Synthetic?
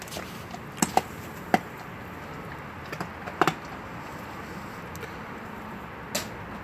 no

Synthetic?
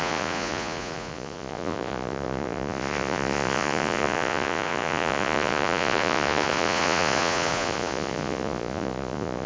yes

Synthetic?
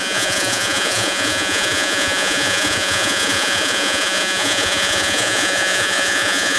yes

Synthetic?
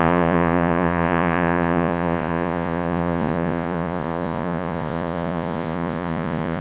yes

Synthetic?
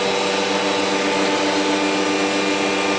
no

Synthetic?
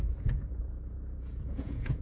yes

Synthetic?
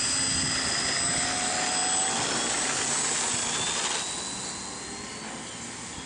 no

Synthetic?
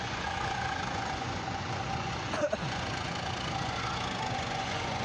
yes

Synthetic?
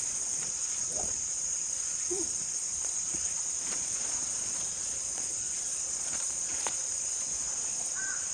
yes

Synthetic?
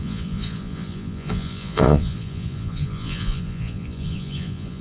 yes